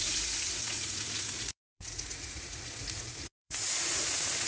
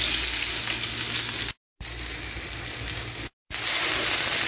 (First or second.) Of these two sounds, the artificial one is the first